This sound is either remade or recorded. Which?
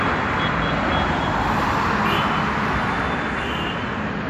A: recorded